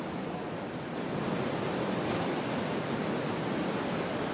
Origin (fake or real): real